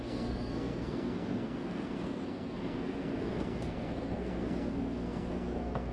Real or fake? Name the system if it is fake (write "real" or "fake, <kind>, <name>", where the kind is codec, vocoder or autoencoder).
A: fake, codec, SNAC